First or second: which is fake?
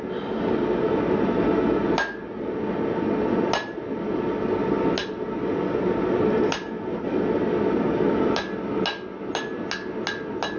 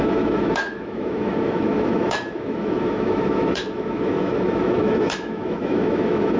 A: second